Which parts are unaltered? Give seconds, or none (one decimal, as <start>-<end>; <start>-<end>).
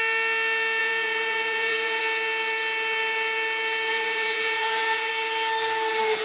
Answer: 0.0-0.8; 2.0-3.9; 5.1-6.2